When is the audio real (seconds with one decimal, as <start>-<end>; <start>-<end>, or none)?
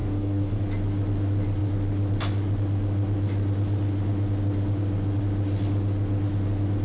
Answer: 0.6-6.8